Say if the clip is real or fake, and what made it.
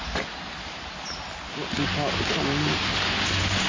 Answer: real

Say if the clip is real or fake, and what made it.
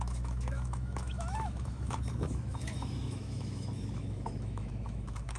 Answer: fake, autoencoder, DAC-VAE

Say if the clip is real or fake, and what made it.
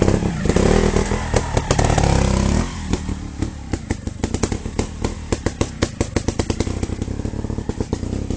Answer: real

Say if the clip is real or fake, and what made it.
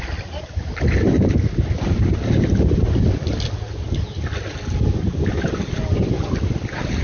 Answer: real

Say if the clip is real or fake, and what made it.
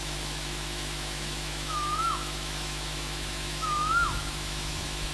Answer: fake, autoencoder, DAC-VAE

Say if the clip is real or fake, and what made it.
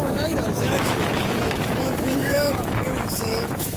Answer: fake, autoencoder, DAC-VAE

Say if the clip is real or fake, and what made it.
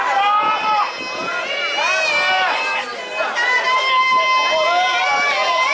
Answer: real